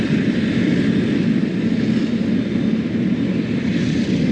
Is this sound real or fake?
real